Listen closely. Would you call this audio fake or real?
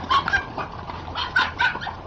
real